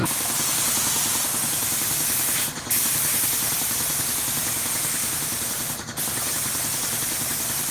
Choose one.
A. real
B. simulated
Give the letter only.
B